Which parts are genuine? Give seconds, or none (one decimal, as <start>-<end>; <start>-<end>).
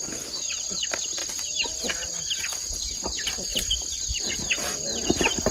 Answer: 0.0-1.2; 1.8-3.5; 4.1-5.5